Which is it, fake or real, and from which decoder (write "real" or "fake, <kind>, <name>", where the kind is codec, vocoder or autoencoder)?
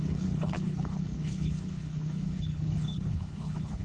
fake, codec, HILCodec